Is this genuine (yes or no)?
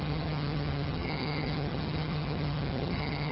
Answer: no